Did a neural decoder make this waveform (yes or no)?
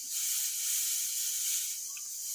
no